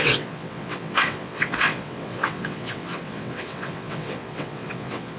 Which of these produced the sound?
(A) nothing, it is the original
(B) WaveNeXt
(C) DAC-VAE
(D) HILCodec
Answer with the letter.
B